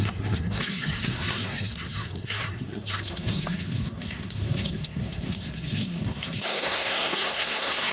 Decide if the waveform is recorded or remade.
remade